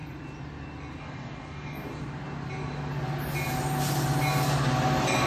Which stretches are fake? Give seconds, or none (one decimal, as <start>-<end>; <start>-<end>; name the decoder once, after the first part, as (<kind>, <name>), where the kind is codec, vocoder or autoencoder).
1.0-2.0 (codec, DAC)